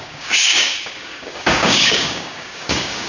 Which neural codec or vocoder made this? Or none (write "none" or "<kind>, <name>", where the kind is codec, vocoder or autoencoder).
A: codec, DAC